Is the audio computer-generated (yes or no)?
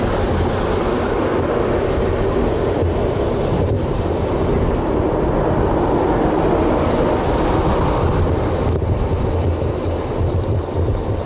no